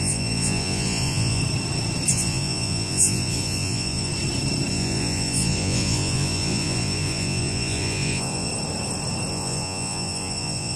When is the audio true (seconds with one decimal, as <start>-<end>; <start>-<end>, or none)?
1.4-2.1; 4.1-4.7; 8.5-9.3

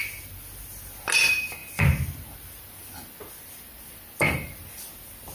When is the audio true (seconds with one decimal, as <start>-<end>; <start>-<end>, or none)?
0.0-5.3

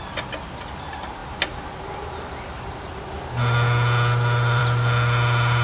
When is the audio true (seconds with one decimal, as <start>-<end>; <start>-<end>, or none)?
0.0-5.6

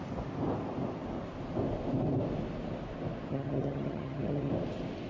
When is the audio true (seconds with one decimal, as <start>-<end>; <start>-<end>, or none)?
0.0-3.3; 4.5-5.1

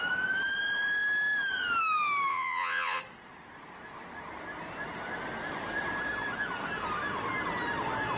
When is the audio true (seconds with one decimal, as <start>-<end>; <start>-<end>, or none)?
0.0-2.3; 3.0-8.2